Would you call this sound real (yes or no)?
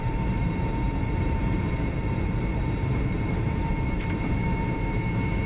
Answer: no